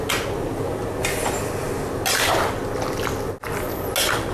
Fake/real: real